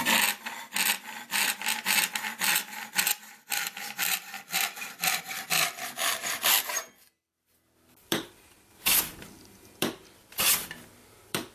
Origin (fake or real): fake